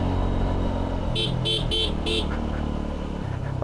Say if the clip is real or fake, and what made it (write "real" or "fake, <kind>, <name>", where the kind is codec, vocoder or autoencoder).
real